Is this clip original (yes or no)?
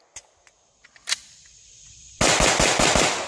yes